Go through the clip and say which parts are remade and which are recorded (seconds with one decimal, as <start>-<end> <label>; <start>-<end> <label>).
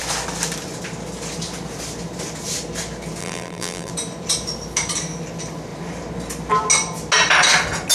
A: 0.0-3.2 recorded; 3.2-3.9 remade; 3.9-7.9 recorded